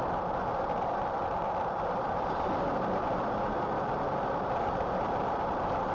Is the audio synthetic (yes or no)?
no